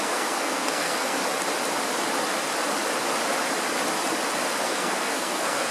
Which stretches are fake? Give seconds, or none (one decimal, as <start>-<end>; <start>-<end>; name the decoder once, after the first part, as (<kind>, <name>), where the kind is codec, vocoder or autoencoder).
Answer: 0.0-1.2 (codec, SNAC); 4.6-5.7